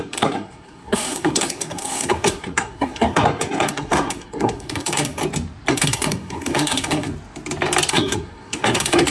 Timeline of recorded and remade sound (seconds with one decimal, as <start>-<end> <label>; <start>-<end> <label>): 0.0-5.2 remade; 5.2-5.7 recorded; 5.7-7.1 remade; 7.1-7.9 recorded; 7.9-9.1 remade